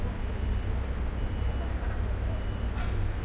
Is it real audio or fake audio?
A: real